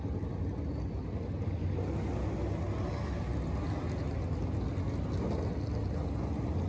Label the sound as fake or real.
real